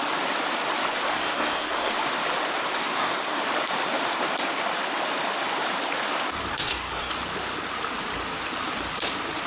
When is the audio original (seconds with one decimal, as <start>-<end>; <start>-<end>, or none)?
0.0-1.1; 1.9-2.8; 3.4-6.5; 7.1-9.5